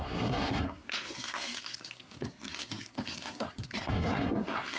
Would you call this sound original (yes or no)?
no